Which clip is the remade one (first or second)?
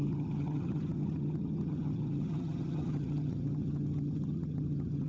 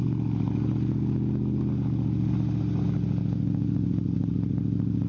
first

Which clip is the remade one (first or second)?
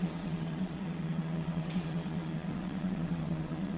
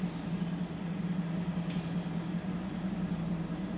first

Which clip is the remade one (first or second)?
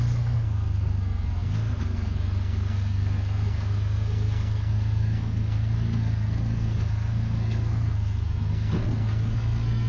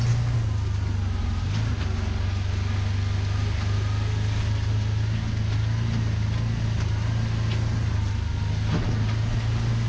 first